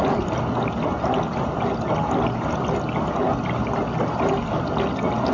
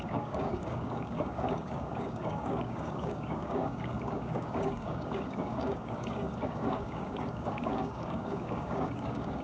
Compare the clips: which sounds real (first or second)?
first